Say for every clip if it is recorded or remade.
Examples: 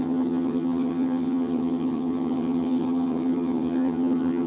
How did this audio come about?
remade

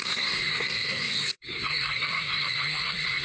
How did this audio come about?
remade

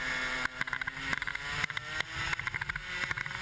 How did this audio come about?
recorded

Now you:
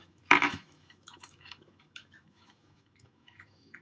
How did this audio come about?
remade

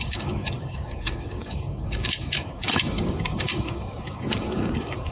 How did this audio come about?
remade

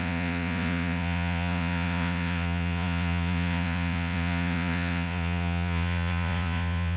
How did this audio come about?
remade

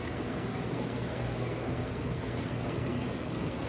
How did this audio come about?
remade